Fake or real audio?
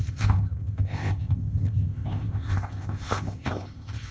fake